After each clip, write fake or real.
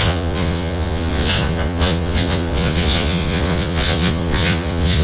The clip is fake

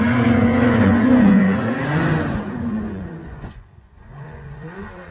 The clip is fake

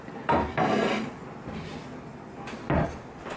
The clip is real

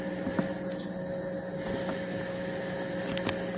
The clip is real